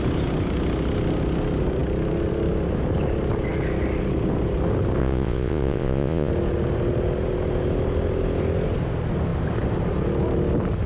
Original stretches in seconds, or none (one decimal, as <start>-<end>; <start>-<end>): 0.0-5.0; 6.3-10.9